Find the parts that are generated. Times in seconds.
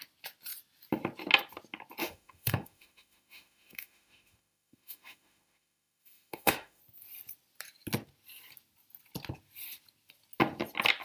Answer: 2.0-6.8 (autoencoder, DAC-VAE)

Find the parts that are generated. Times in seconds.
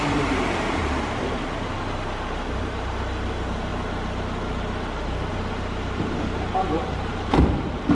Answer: 0.0-3.7 (vocoder, BigVGAN v2); 5.3-7.9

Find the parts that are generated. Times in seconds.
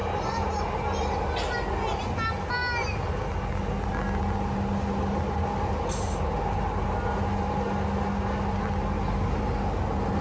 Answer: none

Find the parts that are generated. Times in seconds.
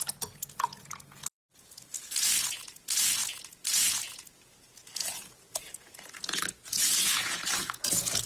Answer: 0.0-8.3 (vocoder, Vocos)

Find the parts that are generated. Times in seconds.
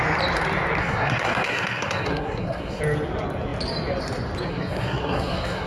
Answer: 0.8-2.8 (codec, SNAC); 4.5-5.7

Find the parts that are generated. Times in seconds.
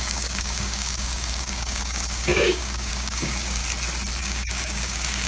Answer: 0.0-3.6 (codec, DAC); 4.2-5.3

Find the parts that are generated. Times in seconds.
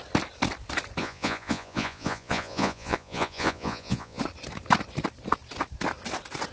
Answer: 1.0-4.2 (vocoder, Vocos)